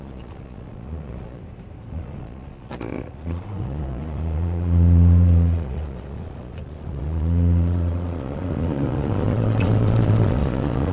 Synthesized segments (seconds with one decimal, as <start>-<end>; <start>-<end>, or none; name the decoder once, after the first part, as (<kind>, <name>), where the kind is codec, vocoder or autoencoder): 0.0-1.4 (vocoder, Vocos); 1.9-10.9